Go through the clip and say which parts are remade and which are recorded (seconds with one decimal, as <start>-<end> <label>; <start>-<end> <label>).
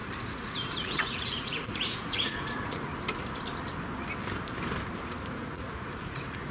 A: 0.0-2.9 remade; 2.9-5.3 recorded; 5.3-6.5 remade